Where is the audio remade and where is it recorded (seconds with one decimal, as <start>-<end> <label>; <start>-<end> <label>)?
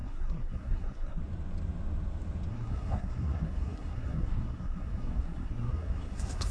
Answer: 0.0-1.2 remade; 1.2-2.5 recorded; 2.5-6.5 remade